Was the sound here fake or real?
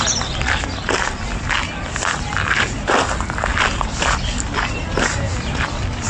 real